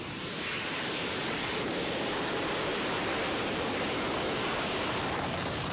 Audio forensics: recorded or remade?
remade